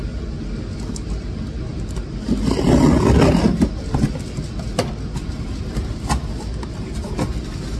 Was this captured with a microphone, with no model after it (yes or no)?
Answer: yes